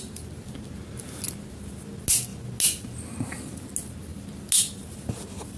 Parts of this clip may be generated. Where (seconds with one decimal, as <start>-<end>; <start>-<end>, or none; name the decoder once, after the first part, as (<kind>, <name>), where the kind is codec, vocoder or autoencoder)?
none